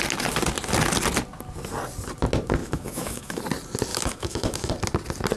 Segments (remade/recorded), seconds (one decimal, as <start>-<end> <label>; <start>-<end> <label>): 0.0-2.6 recorded; 2.6-3.4 remade; 3.4-3.9 recorded; 3.9-4.7 remade; 4.7-5.4 recorded